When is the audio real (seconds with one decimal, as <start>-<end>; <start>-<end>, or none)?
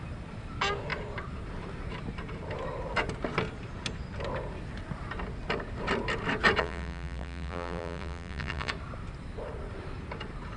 0.0-6.6; 8.7-10.6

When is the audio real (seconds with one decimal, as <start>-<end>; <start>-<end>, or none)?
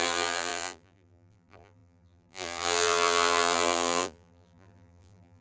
none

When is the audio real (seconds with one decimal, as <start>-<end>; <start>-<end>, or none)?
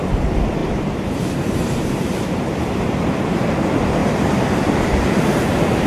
0.0-0.6; 2.4-4.0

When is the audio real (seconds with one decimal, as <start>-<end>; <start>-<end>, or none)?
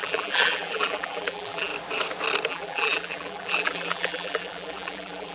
1.7-2.5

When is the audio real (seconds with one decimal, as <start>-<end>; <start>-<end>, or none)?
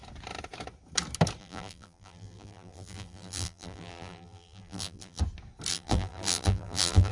0.0-1.4; 5.2-5.7